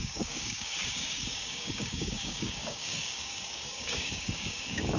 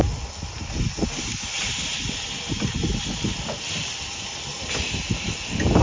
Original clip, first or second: second